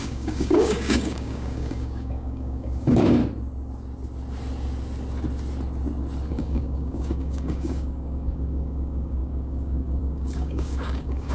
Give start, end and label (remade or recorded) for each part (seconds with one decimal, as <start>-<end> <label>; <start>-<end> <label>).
0.0-3.2 remade; 3.2-6.3 recorded; 6.3-11.3 remade